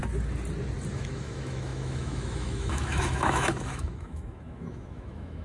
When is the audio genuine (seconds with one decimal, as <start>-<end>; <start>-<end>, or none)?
0.0-0.9